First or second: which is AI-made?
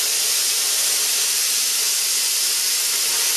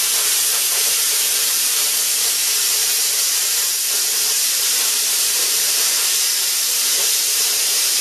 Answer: second